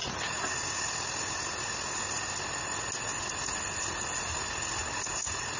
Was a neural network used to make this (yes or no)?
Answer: no